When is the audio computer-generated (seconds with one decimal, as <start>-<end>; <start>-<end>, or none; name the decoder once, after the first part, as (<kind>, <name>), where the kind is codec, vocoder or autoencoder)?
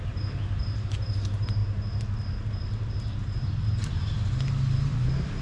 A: none